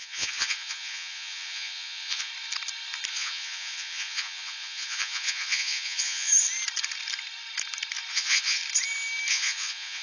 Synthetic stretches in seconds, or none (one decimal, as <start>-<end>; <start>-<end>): 0.0-2.3; 3.1-6.3; 8.1-8.6; 9.3-10.0